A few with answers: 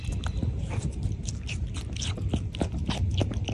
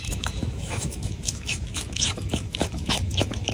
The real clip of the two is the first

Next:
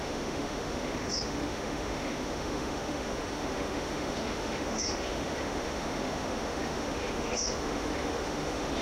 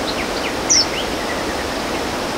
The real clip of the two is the second